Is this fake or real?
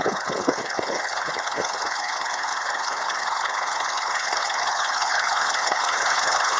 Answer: fake